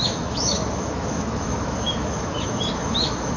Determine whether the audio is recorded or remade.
remade